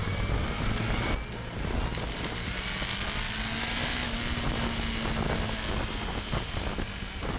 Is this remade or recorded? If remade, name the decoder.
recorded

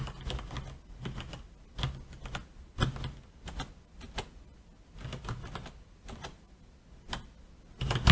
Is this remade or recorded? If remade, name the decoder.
recorded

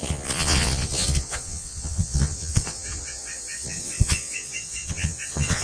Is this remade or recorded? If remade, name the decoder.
remade, vocoder, Vocos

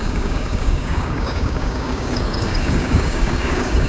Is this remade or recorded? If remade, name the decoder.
remade, codec, DAC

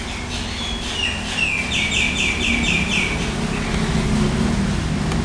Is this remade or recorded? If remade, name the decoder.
recorded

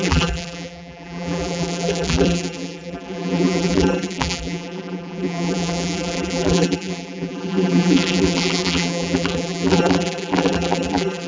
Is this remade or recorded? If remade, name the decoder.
remade, vocoder, BigVGAN v2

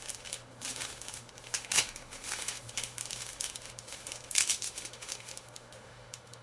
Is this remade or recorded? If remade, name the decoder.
remade, autoencoder, DAC-VAE